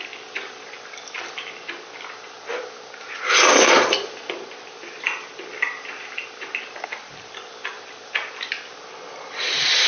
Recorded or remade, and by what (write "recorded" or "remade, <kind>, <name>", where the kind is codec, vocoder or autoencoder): recorded